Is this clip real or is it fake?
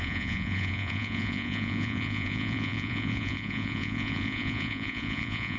fake